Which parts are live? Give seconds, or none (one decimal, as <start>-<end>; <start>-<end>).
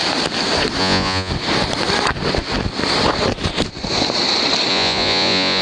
0.0-0.8; 1.3-4.7